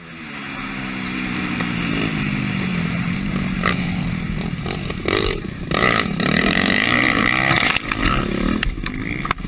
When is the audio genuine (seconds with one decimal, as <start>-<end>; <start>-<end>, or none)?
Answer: 0.0-2.7; 7.2-9.5